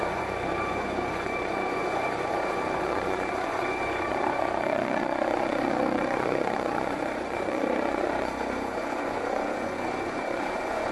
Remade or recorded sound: remade